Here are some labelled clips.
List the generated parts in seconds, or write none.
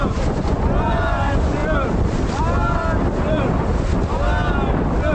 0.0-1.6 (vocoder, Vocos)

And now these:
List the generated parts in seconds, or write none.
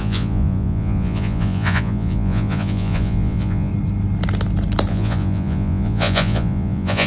0.0-3.7 (vocoder, Vocos); 4.9-7.1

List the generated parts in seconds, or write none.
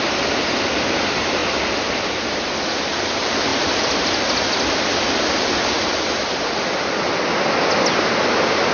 none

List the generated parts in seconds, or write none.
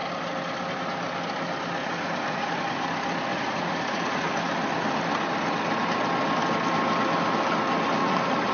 1.8-2.6 (vocoder, Vocos); 3.3-4.3; 8.0-8.5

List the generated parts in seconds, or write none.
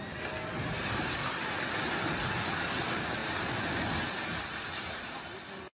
none